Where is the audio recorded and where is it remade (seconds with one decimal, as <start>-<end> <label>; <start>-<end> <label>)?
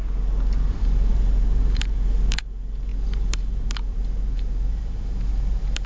0.0-5.9 remade